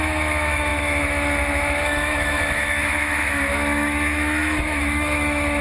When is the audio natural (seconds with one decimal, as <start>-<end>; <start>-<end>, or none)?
none